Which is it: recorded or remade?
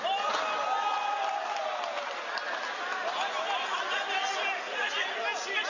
recorded